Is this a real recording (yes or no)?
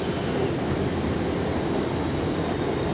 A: yes